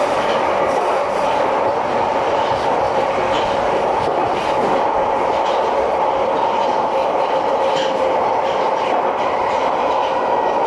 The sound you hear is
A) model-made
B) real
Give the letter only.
B